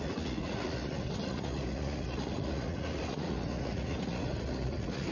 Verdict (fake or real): fake